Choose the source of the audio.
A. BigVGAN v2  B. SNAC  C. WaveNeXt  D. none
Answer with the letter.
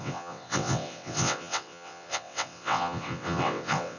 C